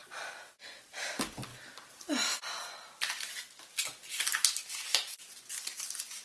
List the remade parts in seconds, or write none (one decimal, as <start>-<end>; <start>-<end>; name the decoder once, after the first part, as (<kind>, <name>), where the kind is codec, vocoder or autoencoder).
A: none